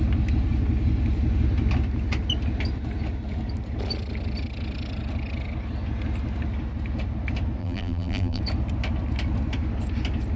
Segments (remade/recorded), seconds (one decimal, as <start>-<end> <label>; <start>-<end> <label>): 0.0-7.6 recorded; 7.6-8.4 remade; 8.4-10.4 recorded